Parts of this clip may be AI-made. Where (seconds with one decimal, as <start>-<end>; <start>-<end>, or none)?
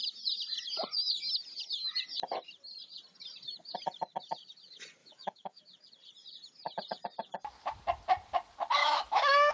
5.0-5.6; 8.8-9.5